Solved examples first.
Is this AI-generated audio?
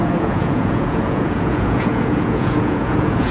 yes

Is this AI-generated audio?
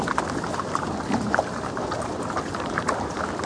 no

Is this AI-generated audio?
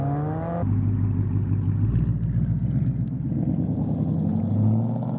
no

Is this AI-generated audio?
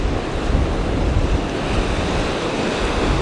no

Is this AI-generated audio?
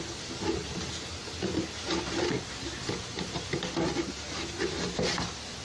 no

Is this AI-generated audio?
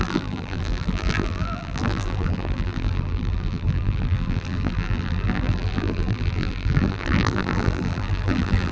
yes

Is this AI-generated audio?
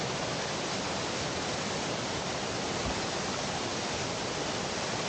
no